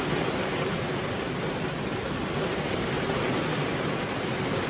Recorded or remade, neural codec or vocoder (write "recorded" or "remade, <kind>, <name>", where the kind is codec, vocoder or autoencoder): recorded